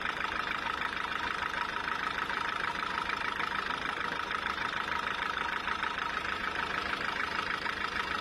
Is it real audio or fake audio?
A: fake